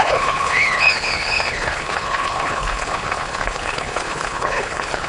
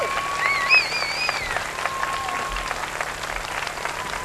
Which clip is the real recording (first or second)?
second